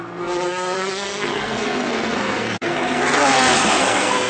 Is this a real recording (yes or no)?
no